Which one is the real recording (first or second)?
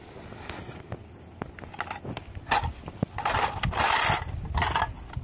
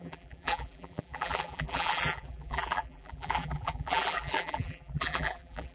first